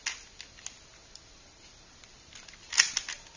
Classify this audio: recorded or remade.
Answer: recorded